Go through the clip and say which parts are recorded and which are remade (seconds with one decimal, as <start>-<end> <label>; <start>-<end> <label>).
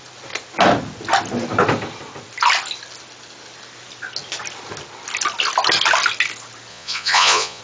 0.0-6.7 recorded; 6.7-7.6 remade